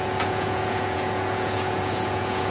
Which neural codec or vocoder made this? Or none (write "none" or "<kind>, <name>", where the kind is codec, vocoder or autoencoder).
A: vocoder, Vocos